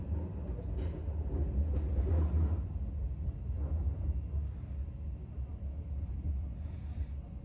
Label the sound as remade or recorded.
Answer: recorded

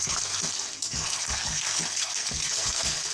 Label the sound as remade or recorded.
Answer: remade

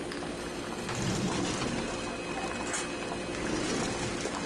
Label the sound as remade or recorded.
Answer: recorded